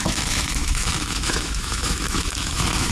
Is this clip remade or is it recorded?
remade